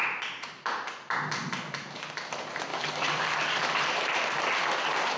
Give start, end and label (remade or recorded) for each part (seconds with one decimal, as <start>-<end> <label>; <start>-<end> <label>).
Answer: 0.0-2.7 recorded; 2.7-3.8 remade; 3.8-5.2 recorded